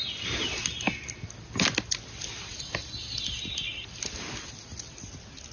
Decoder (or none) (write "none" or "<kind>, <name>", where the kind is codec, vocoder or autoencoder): none